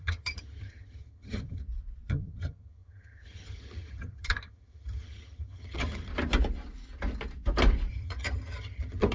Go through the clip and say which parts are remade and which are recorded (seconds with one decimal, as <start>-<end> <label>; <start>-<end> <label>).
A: 0.0-1.6 remade; 1.6-2.1 recorded; 2.1-6.1 remade; 6.1-7.9 recorded; 7.9-9.1 remade